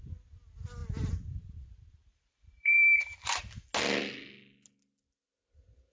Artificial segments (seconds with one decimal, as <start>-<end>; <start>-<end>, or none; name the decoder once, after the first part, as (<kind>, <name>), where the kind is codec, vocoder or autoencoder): 0.8-3.4 (vocoder, BigVGAN v2)